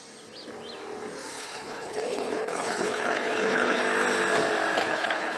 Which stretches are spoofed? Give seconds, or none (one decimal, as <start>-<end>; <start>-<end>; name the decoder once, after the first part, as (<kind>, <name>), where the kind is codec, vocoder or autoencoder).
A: 1.3-3.8 (codec, HILCodec); 4.8-5.4